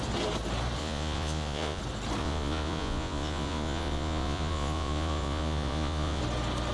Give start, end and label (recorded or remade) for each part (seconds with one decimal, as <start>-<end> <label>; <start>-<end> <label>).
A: 0.0-0.8 recorded; 0.8-1.8 remade; 1.8-2.2 recorded; 2.2-6.2 remade; 6.2-6.7 recorded